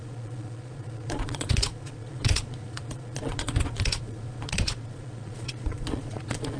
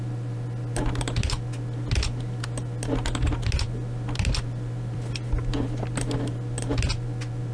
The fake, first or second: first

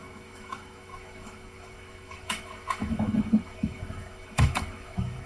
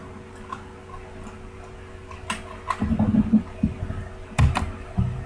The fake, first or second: first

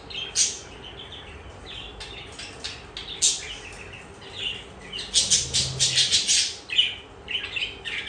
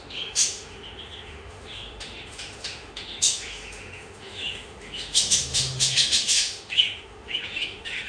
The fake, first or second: second